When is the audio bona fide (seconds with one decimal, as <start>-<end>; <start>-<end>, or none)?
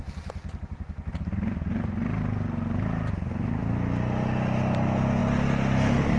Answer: 0.0-6.2